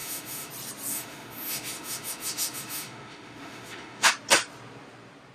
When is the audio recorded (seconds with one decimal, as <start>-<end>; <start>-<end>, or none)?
0.5-0.9; 4.1-5.3